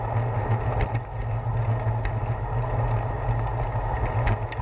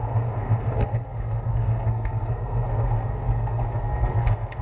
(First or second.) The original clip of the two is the first